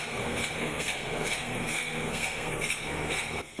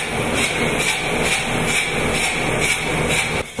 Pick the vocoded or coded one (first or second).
first